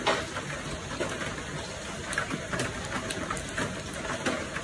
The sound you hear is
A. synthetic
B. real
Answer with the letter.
B